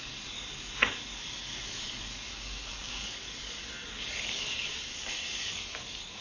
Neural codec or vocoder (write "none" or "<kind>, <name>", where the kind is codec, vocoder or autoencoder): codec, DAC